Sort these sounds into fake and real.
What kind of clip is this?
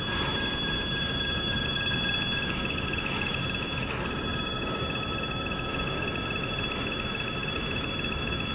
fake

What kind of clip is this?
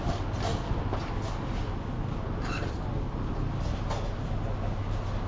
real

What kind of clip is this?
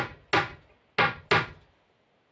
real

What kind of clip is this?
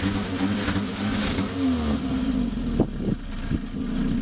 real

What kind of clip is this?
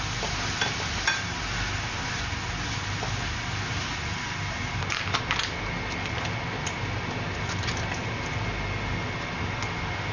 real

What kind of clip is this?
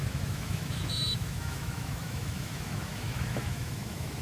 fake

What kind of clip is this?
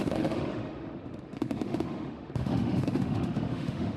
fake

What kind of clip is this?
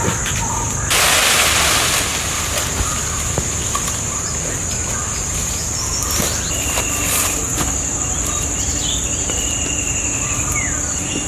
real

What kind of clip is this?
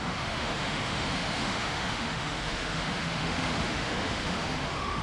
fake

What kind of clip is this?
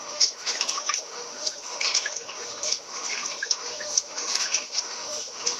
fake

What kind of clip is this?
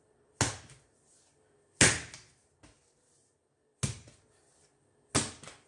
real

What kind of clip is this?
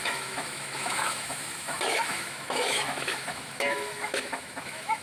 fake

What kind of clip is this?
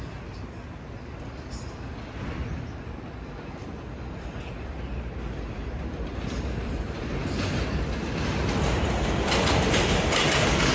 real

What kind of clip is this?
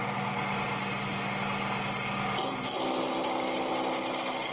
real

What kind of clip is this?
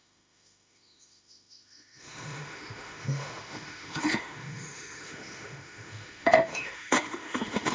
fake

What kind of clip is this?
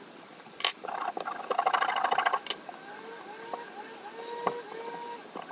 real